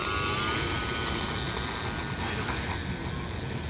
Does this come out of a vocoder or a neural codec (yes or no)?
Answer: no